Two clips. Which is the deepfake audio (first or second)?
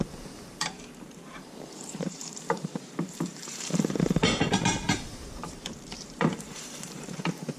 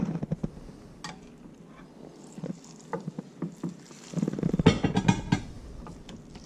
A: first